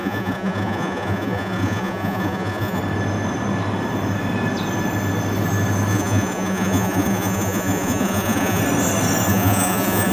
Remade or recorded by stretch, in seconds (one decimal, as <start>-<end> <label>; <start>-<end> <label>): 0.0-2.8 remade; 2.8-5.9 recorded; 5.9-8.6 remade; 8.6-9.3 recorded; 9.3-10.1 remade